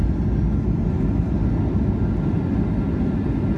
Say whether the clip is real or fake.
real